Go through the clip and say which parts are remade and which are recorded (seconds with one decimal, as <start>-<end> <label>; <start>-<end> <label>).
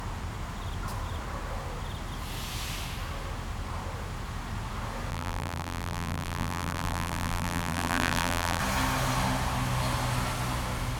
0.0-5.1 recorded; 5.1-8.6 remade; 8.6-11.0 recorded